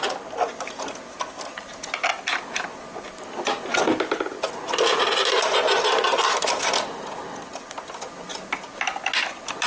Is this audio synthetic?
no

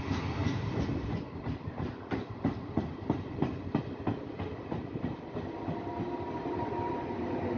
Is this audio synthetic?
no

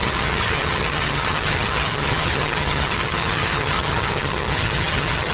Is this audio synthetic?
yes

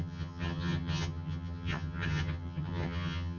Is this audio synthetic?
yes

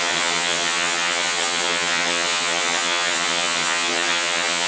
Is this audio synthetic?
yes